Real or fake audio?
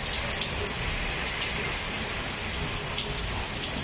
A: real